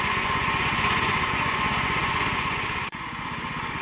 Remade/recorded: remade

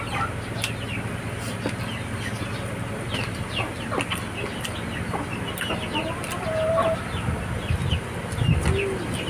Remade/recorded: recorded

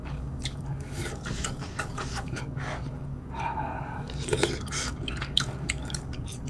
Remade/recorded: remade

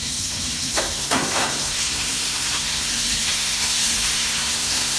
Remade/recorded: remade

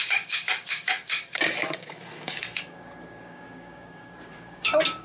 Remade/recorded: remade